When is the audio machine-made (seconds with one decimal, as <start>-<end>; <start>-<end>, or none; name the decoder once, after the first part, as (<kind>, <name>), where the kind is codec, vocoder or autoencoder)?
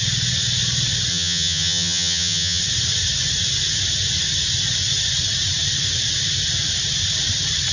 1.1-2.6 (vocoder, HiFi-GAN)